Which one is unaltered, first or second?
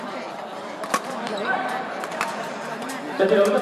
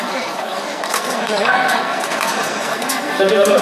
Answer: first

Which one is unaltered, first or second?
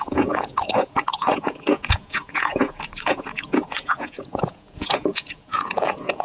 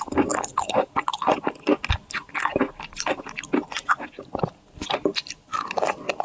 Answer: second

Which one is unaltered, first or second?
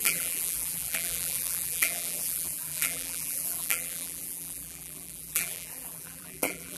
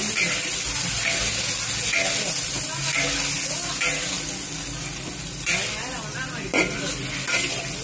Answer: second